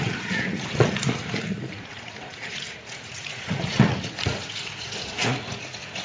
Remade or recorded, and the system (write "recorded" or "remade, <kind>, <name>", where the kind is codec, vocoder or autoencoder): remade, vocoder, Vocos